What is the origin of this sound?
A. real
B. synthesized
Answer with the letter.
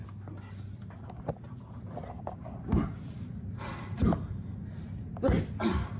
A